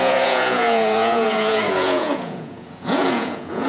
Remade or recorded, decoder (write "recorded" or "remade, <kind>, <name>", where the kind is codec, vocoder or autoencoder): remade, vocoder, Vocos